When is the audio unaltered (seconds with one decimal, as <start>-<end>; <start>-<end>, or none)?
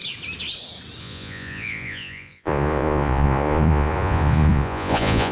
0.0-1.0